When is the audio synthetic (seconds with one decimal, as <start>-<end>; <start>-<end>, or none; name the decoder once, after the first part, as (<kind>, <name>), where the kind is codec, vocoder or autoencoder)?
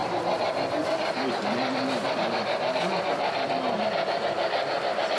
0.0-2.2 (vocoder, BigVGAN v2)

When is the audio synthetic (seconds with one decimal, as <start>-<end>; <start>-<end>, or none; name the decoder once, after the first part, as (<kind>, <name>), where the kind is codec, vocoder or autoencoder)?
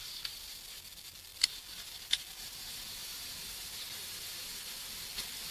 1.3-1.9 (vocoder, BigVGAN v2)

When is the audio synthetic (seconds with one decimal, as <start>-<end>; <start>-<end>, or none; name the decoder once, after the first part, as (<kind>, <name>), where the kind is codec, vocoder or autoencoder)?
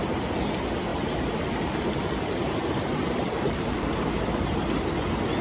0.9-4.1 (vocoder, BigVGAN v2)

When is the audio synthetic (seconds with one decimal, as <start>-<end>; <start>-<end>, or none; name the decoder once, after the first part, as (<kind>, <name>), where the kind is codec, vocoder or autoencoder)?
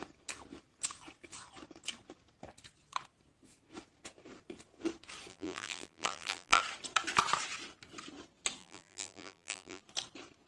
5.3-6.6 (vocoder, BigVGAN v2); 8.6-9.8